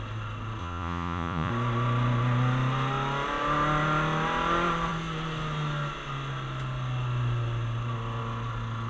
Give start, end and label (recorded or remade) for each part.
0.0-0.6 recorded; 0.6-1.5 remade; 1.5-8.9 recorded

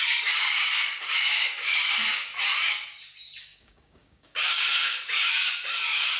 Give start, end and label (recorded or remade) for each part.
0.0-2.3 remade; 2.3-3.4 recorded; 3.4-6.2 remade

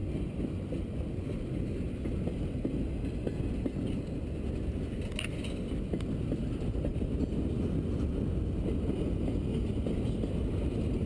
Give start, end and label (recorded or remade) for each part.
0.0-11.1 recorded

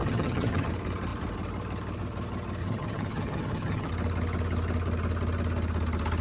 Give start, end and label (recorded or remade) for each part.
0.0-0.7 remade; 0.7-2.6 recorded; 2.6-3.9 remade; 3.9-6.2 recorded

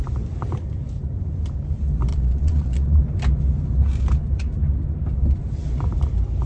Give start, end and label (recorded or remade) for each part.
0.0-2.1 recorded; 2.1-3.0 remade; 3.0-6.5 recorded

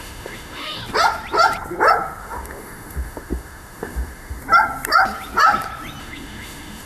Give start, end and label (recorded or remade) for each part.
0.0-0.8 remade; 0.8-2.2 recorded; 2.2-4.4 remade; 4.4-6.0 recorded; 6.0-6.9 remade

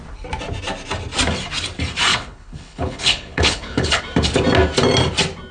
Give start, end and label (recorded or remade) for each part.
0.0-2.1 recorded; 2.1-4.0 remade; 4.0-5.5 recorded

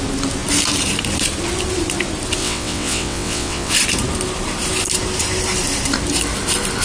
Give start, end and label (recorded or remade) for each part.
0.0-2.4 recorded; 2.4-3.7 remade; 3.7-6.8 recorded